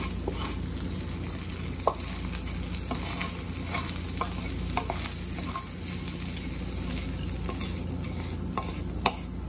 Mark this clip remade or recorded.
recorded